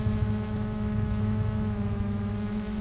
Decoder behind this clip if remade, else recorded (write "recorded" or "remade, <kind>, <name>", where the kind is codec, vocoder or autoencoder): remade, autoencoder, DAC-VAE